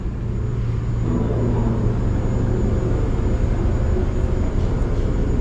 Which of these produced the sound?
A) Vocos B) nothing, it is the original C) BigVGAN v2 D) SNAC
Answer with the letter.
B